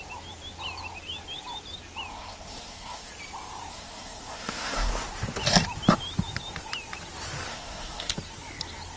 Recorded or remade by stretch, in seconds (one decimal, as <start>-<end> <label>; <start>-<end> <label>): 0.0-2.1 recorded; 2.1-3.1 remade; 3.1-3.7 recorded; 3.7-4.9 remade; 4.9-7.5 recorded; 7.5-8.1 remade; 8.1-9.0 recorded